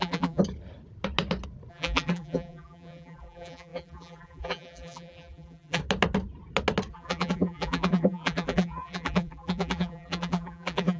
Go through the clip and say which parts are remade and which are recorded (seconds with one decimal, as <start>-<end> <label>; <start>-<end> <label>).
0.0-0.4 remade; 0.4-1.7 recorded; 1.7-5.8 remade; 5.8-6.9 recorded; 6.9-11.0 remade